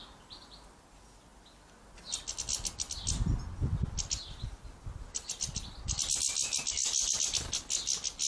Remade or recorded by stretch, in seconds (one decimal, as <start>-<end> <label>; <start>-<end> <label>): 0.0-8.3 recorded